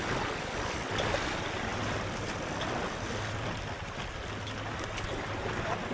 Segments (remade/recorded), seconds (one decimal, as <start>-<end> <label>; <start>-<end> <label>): 0.0-5.9 recorded